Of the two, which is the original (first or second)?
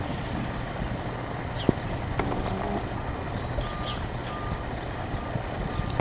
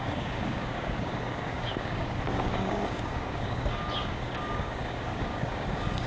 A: first